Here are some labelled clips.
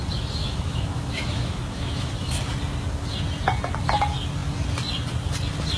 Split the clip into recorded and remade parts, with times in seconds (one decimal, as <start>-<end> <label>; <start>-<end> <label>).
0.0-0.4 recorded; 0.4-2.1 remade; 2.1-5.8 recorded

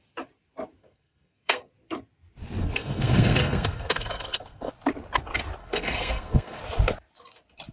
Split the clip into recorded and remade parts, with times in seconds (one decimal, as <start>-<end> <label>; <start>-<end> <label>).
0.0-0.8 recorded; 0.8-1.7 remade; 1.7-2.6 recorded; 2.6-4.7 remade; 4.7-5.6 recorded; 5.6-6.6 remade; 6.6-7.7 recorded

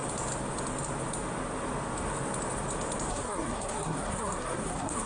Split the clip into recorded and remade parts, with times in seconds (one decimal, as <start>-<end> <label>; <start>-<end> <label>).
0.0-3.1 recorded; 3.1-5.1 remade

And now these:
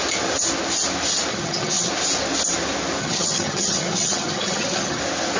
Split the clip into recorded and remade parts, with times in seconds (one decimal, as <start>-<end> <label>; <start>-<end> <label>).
0.0-1.3 recorded; 1.3-1.9 remade; 1.9-3.0 recorded; 3.0-5.0 remade; 5.0-5.4 recorded

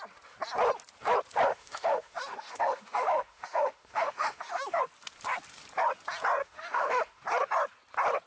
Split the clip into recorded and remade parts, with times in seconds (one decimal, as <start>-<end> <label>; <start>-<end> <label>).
0.0-1.5 recorded; 1.5-4.8 remade; 4.8-6.4 recorded; 6.4-7.2 remade; 7.2-8.3 recorded